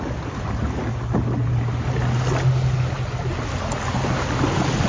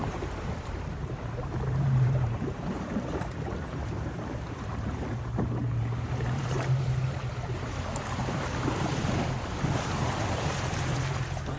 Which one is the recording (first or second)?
first